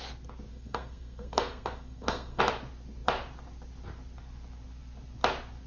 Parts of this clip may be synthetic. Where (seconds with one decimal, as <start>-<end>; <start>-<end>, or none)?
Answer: 0.5-2.4